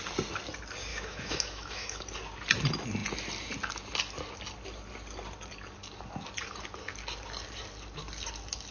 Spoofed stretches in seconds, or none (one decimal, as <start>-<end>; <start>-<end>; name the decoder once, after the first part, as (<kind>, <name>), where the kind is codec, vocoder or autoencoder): 0.9-2.0 (autoencoder, DAC-VAE)